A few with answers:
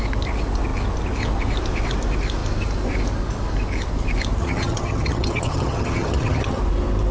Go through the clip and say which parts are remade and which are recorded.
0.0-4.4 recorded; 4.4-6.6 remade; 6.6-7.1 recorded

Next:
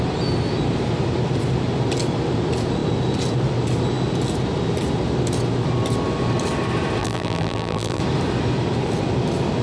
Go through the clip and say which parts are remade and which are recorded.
0.0-7.0 recorded; 7.0-8.0 remade; 8.0-9.6 recorded